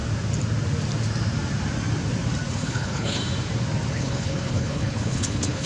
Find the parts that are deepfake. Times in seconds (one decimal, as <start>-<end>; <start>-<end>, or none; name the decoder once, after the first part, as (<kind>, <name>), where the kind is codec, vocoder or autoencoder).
2.5-3.2 (codec, HILCodec); 3.9-5.7